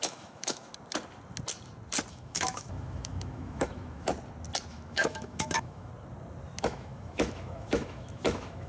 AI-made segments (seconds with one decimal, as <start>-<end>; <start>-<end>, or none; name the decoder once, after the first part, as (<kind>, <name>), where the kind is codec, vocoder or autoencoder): 0.0-0.7 (autoencoder, DAC-VAE); 2.1-4.1; 4.7-5.9; 6.6-8.7

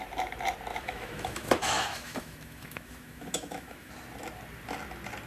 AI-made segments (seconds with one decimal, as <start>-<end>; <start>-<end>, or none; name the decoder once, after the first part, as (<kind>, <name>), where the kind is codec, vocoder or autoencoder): 0.7-3.9 (autoencoder, DAC-VAE)

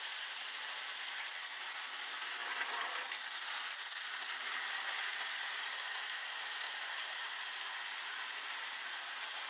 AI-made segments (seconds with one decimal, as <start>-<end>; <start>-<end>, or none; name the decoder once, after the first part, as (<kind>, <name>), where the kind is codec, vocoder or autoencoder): none

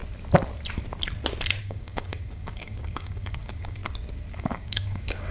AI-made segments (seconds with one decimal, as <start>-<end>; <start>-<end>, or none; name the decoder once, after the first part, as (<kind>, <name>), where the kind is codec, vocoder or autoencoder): 1.6-3.8 (codec, DAC); 4.3-5.3

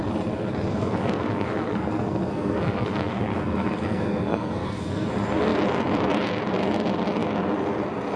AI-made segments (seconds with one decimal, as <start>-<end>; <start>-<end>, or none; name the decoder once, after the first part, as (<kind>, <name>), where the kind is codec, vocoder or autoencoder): 0.7-5.1 (codec, SNAC)

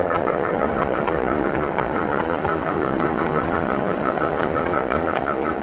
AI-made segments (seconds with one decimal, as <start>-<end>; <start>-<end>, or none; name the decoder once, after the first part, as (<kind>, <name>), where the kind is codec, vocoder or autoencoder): 0.0-5.6 (vocoder, Vocos)

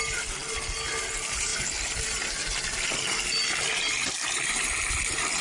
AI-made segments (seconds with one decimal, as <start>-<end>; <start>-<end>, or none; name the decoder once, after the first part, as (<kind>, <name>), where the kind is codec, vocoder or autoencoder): none

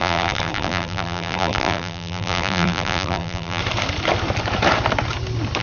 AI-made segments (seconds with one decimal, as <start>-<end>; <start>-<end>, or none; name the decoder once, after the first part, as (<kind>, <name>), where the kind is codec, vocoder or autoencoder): 0.0-3.6 (vocoder, BigVGAN v2)